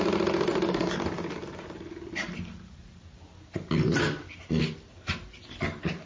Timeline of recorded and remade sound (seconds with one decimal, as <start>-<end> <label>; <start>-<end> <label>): 0.0-6.1 recorded